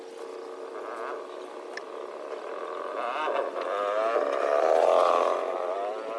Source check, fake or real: real